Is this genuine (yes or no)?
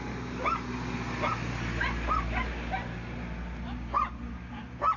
yes